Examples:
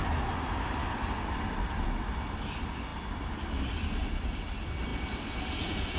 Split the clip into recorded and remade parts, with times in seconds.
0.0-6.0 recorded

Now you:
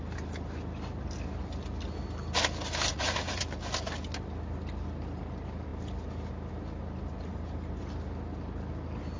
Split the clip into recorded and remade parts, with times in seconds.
0.0-2.9 recorded; 2.9-3.4 remade; 3.4-9.2 recorded

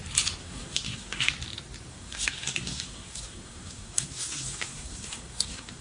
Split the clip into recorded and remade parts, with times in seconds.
0.0-0.4 recorded; 0.4-1.3 remade; 1.3-1.9 recorded; 1.9-5.8 remade

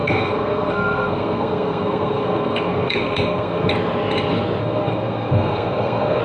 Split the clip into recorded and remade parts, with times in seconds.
0.0-3.7 remade; 3.7-4.6 recorded; 4.6-6.2 remade